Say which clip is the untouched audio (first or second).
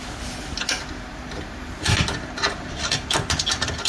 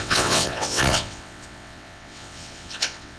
first